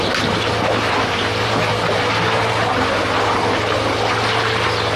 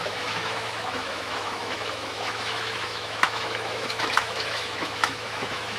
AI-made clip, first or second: second